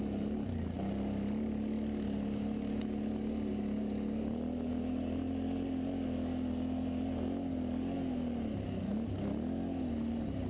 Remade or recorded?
recorded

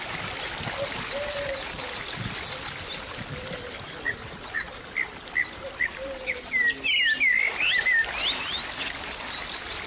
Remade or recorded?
recorded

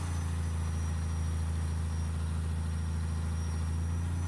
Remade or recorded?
recorded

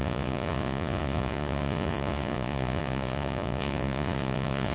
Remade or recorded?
remade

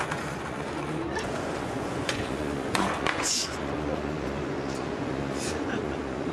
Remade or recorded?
remade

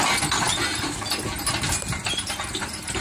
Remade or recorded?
recorded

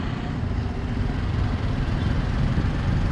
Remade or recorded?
recorded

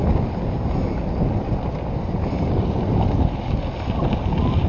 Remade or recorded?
recorded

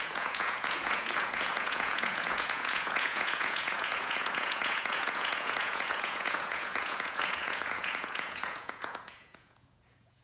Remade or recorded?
remade